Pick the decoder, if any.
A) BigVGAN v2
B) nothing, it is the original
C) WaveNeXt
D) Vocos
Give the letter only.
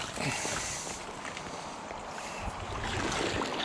B